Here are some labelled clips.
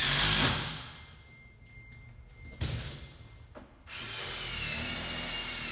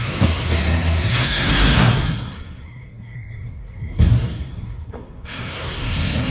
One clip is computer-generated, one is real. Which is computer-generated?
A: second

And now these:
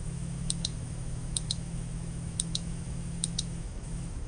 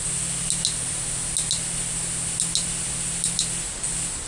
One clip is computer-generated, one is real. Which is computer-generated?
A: first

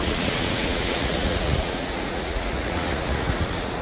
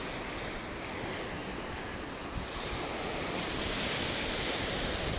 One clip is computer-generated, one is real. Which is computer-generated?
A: first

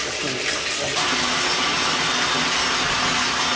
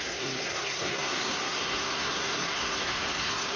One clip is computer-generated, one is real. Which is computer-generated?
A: second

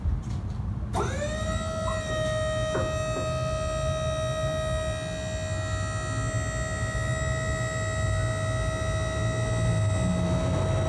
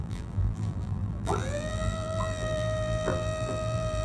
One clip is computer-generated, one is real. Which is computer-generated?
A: second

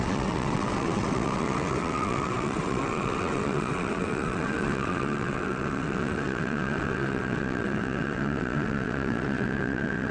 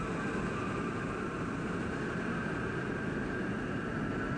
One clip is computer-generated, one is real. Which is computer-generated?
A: first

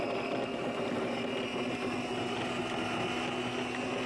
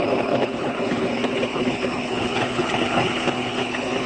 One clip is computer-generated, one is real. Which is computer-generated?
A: second